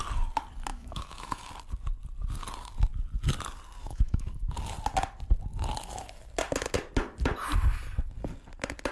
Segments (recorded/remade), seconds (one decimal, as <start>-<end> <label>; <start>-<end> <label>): 0.0-0.7 recorded; 0.7-1.5 remade; 1.5-3.8 recorded; 3.8-4.4 remade; 4.4-8.9 recorded